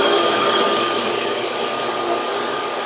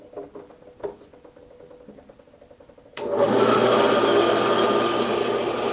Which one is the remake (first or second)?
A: first